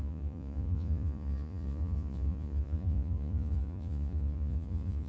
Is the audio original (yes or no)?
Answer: no